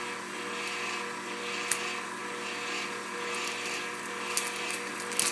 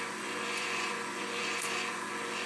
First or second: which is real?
first